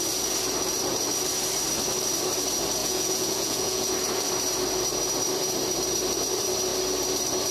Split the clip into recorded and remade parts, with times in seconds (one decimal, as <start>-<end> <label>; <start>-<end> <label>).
0.0-2.8 recorded; 2.8-3.9 remade; 3.9-7.5 recorded